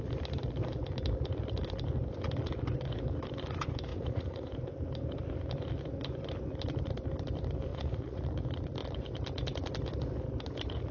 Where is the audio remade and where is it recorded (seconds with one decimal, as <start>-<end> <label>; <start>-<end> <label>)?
0.0-3.9 recorded; 3.9-4.5 remade; 4.5-7.7 recorded; 7.7-8.2 remade; 8.2-10.9 recorded